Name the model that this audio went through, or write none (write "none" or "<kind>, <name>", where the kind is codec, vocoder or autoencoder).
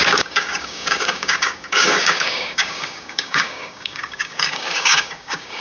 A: codec, DAC